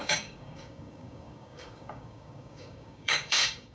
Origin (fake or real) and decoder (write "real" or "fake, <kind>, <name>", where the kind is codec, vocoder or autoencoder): fake, codec, DAC